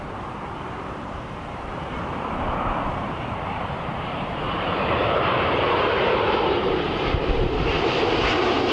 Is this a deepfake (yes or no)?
yes